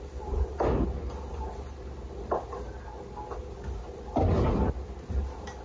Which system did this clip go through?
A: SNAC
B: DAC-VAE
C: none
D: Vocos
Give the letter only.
C